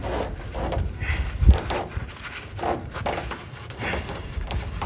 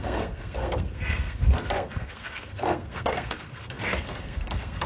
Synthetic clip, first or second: second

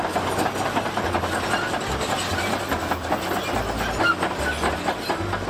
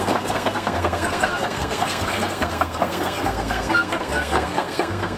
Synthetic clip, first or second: second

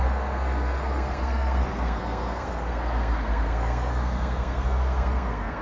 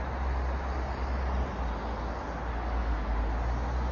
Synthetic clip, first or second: first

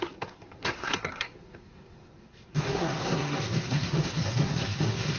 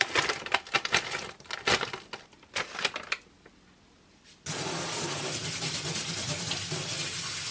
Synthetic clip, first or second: first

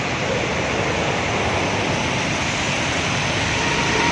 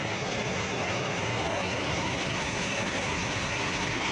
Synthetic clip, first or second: second